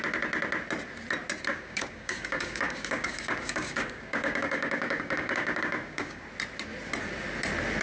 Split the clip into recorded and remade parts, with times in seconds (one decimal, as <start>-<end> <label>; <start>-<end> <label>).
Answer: 0.0-1.5 recorded; 1.5-6.2 remade; 6.2-7.8 recorded